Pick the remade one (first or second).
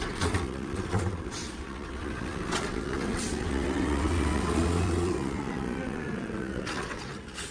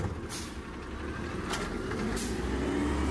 first